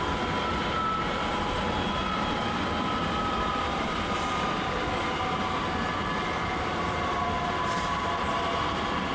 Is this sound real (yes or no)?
yes